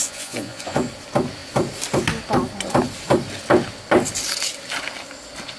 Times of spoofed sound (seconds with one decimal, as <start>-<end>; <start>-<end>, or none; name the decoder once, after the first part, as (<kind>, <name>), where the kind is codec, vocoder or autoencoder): 0.0-0.9 (vocoder, Vocos)